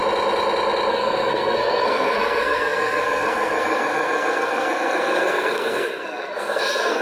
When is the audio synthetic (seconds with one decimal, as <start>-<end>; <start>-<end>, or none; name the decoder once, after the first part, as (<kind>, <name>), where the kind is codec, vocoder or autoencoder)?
0.9-7.0 (codec, SNAC)